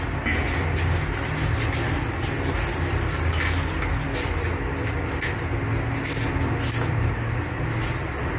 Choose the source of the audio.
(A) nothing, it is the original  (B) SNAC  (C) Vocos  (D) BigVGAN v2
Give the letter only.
A